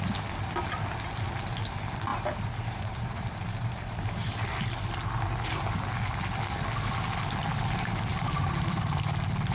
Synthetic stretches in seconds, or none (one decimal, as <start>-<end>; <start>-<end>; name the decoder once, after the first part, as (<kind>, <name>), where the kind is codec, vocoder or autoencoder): 2.1-4.4 (vocoder, BigVGAN v2); 8.1-8.9